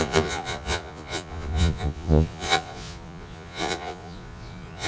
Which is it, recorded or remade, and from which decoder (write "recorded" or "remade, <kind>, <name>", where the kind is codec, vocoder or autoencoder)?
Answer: remade, vocoder, Vocos